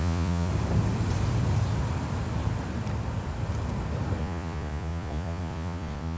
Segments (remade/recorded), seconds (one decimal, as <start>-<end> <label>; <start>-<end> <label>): 0.0-0.5 remade; 0.5-4.2 recorded; 4.2-6.2 remade